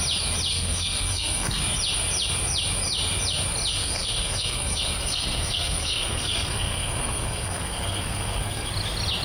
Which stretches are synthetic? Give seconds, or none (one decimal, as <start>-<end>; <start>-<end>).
0.5-1.6; 3.7-8.7